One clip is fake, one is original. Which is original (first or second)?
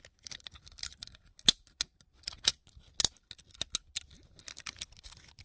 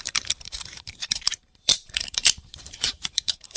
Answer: first